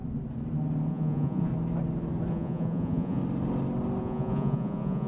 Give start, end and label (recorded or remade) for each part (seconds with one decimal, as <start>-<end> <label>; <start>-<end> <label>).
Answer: 0.0-0.9 recorded; 0.9-1.5 remade; 1.5-2.3 recorded; 2.3-3.2 remade; 3.2-4.0 recorded; 4.0-5.1 remade